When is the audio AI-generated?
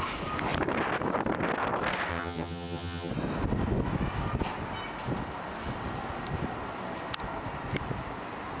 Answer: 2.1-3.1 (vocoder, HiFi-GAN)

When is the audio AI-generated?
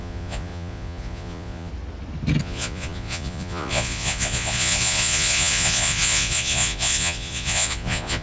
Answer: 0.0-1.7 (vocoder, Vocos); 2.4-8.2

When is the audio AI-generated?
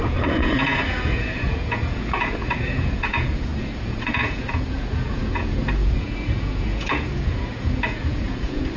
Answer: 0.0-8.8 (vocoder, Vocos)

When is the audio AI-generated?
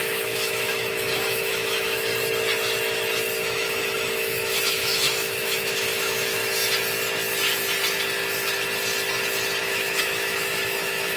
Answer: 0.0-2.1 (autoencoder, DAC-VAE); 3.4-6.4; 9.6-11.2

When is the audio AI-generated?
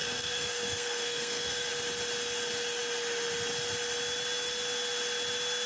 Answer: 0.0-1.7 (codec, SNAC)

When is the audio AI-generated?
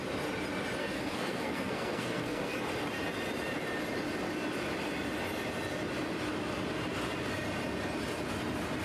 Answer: 0.8-2.6 (codec, SNAC)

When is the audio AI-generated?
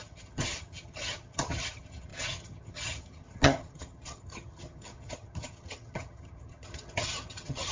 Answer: 0.0-7.7 (vocoder, HiFi-GAN)